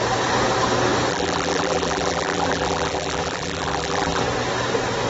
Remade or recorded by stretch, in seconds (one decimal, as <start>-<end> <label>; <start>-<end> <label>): 0.0-1.1 recorded; 1.1-4.2 remade; 4.2-5.1 recorded